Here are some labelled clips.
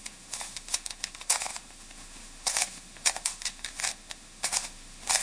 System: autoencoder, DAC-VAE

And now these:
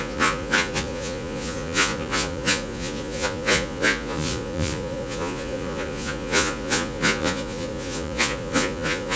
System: vocoder, Vocos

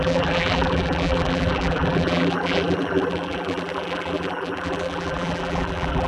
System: vocoder, BigVGAN v2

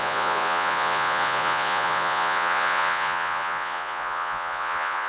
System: vocoder, Vocos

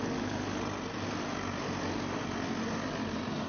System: none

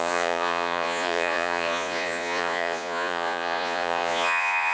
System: vocoder, Vocos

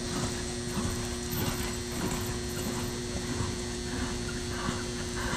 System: none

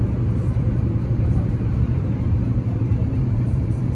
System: vocoder, BigVGAN v2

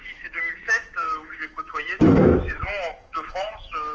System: autoencoder, DAC-VAE